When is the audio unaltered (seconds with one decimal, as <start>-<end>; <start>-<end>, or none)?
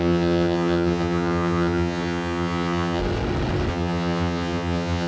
3.0-3.7